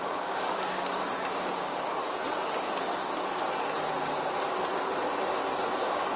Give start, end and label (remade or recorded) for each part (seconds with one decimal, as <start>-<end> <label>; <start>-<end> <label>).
0.0-2.0 remade; 2.0-5.7 recorded; 5.7-6.2 remade